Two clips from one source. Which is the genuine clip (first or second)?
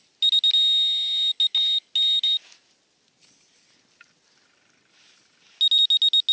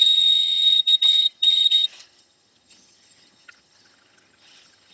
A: first